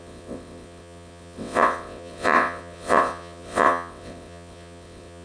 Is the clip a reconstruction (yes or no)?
yes